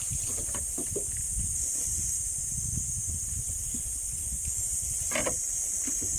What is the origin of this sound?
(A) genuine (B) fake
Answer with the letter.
B